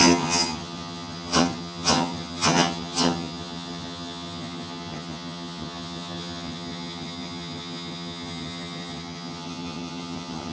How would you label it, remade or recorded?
remade